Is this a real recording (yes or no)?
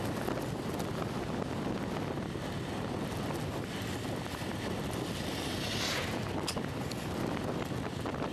yes